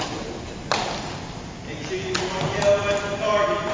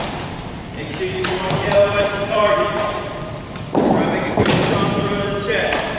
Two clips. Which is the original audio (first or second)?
first